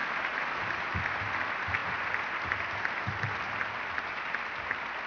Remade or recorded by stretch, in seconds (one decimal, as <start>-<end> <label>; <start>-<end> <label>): 0.0-5.1 recorded